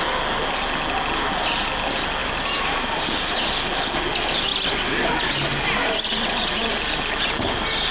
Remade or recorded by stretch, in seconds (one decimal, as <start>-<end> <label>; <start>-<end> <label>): 0.0-2.2 recorded; 2.2-3.5 remade; 3.5-7.9 recorded